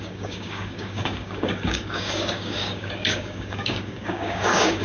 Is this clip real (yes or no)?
no